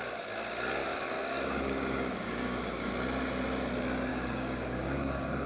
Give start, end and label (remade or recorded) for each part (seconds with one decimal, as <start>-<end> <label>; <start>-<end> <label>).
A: 0.0-0.8 recorded; 0.8-2.9 remade; 2.9-4.1 recorded; 4.1-5.5 remade